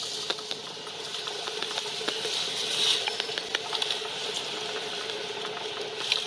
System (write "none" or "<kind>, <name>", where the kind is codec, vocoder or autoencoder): none